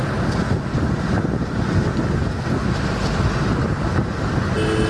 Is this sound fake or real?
real